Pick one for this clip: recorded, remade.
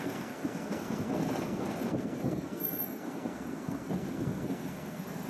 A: remade